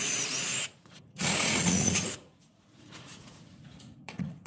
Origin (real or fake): fake